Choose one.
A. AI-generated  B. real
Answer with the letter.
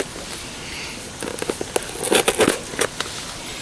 B